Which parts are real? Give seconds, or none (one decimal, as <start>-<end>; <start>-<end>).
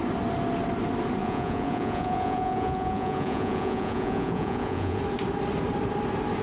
0.0-1.2; 5.0-6.4